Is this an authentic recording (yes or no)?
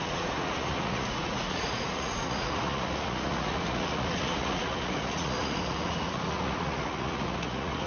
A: no